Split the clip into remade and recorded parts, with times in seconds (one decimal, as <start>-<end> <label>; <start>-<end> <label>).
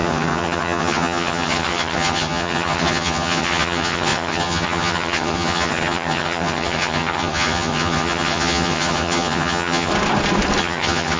0.0-9.9 remade; 9.9-10.6 recorded; 10.6-11.2 remade